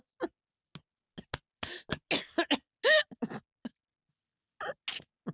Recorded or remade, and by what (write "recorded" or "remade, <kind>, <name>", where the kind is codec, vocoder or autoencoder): recorded